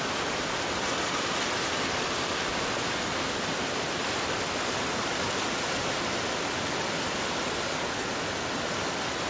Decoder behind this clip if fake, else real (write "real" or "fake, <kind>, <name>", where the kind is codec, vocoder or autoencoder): real